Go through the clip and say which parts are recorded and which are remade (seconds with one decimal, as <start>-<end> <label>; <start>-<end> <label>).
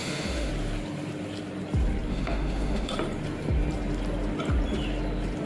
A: 0.0-0.5 remade; 0.5-2.1 recorded; 2.1-2.9 remade; 2.9-5.5 recorded